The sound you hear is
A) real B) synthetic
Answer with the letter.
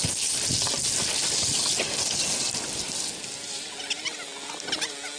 A